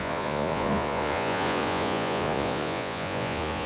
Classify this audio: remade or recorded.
remade